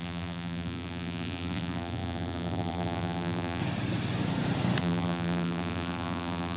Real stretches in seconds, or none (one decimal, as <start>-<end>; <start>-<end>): 3.6-4.8